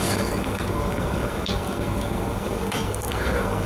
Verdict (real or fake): fake